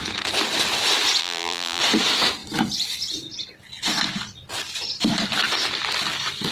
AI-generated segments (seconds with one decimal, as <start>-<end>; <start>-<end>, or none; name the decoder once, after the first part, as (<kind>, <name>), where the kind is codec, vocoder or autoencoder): 1.2-1.8 (vocoder, BigVGAN v2)